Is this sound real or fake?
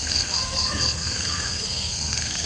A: fake